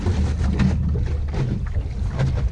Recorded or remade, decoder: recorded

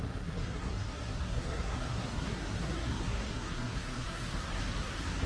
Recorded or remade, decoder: remade, codec, SNAC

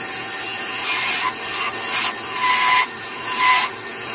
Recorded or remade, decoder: recorded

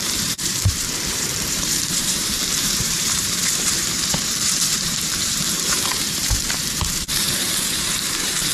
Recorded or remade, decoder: remade, vocoder, BigVGAN v2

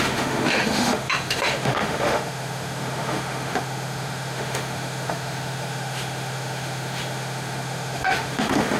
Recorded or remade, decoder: remade, autoencoder, DAC-VAE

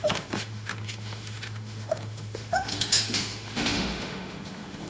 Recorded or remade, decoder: remade, autoencoder, DAC-VAE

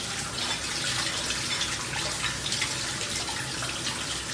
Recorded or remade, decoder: recorded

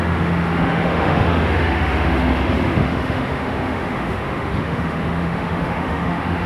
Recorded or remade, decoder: remade, autoencoder, DAC-VAE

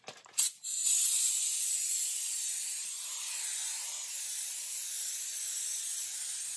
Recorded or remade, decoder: recorded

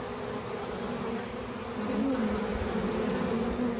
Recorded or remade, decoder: recorded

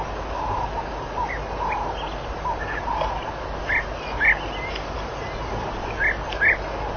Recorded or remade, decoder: recorded